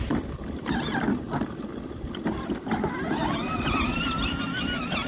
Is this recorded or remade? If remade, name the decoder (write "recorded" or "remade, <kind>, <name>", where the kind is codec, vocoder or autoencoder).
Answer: remade, vocoder, BigVGAN v2